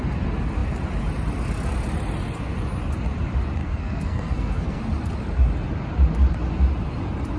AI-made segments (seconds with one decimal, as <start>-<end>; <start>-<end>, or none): 3.6-4.8